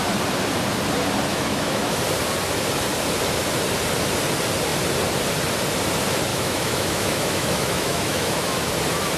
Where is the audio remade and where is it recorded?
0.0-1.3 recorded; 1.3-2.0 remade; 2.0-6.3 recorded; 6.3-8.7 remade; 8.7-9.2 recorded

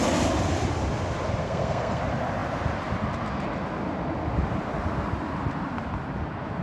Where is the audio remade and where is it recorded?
0.0-1.4 recorded; 1.4-2.0 remade; 2.0-6.6 recorded

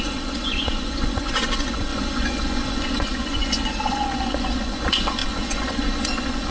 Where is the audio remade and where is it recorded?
0.0-6.5 remade

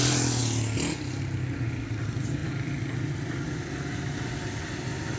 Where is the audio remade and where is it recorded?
0.0-5.2 recorded